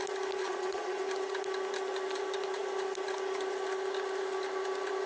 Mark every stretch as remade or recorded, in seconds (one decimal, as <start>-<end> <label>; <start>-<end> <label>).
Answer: 0.0-0.4 recorded; 0.4-1.0 remade; 1.0-5.1 recorded